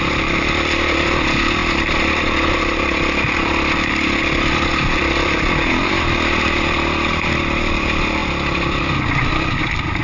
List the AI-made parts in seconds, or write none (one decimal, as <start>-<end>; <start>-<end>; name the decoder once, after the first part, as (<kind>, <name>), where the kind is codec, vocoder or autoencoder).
0.0-1.6 (vocoder, BigVGAN v2); 2.5-10.0